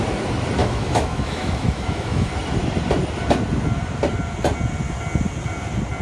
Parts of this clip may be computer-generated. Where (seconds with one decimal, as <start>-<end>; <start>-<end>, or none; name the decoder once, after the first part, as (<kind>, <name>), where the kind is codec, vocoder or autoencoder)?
0.6-2.3 (autoencoder, DAC-VAE)